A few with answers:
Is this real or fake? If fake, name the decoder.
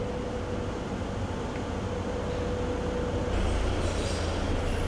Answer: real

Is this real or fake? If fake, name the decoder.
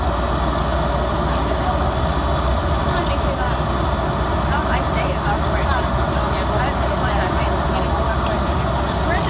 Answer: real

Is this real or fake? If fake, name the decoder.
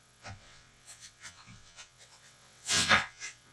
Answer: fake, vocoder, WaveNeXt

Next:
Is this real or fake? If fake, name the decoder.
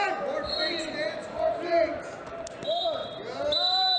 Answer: real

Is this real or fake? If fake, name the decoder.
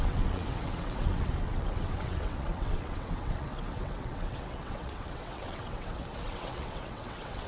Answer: fake, vocoder, WaveNeXt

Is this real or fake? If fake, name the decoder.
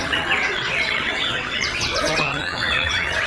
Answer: fake, vocoder, WaveNeXt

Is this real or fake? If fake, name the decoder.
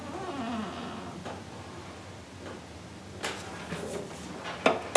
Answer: real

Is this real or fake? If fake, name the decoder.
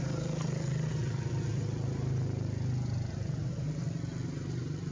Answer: real